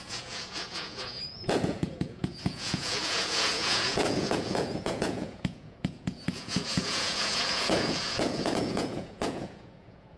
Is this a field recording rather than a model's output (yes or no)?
no